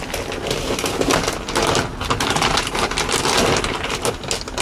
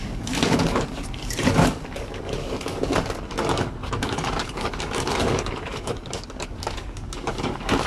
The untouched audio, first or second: first